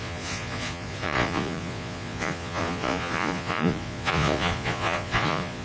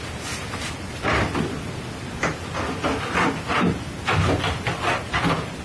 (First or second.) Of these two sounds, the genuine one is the second